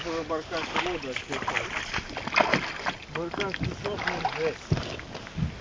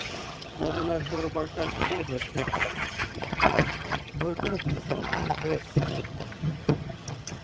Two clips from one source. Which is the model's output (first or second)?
second